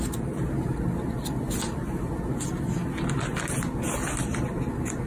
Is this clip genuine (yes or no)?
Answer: yes